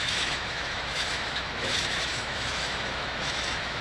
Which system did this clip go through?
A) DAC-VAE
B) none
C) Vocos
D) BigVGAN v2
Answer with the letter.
A